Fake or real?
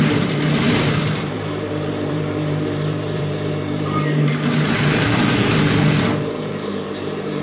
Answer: fake